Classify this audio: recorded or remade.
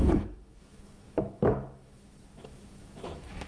remade